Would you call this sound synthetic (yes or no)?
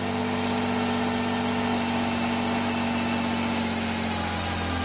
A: no